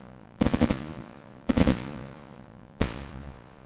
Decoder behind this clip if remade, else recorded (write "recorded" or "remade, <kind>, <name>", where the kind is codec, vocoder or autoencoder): remade, vocoder, Vocos